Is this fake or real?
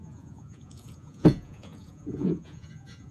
fake